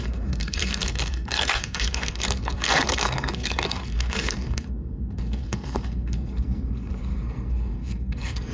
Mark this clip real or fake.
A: fake